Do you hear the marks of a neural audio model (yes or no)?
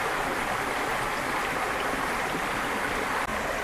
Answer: no